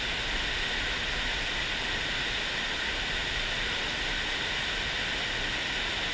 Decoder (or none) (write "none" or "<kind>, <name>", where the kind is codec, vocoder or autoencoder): none